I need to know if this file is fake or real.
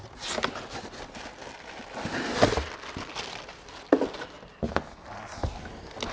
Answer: real